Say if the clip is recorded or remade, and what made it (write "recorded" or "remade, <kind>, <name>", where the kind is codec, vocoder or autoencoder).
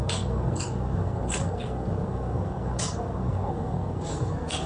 remade, codec, SNAC